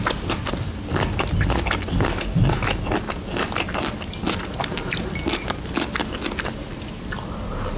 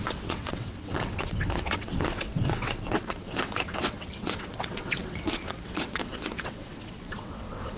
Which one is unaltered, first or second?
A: first